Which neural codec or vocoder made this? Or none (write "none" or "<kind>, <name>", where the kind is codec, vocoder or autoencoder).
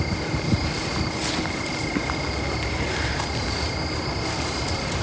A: none